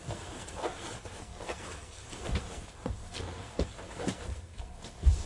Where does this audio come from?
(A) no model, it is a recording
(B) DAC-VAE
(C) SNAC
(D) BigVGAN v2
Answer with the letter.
C